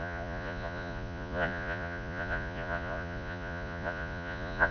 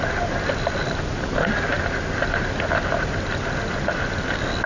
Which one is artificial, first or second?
first